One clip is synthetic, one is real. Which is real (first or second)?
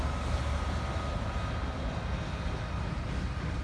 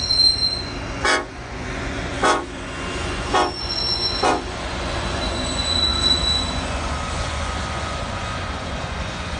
first